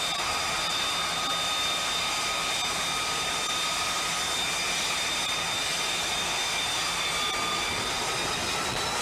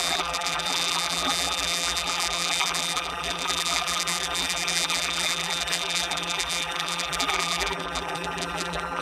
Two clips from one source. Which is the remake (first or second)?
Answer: second